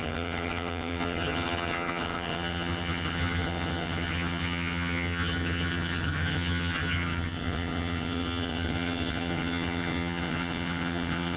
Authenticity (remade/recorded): remade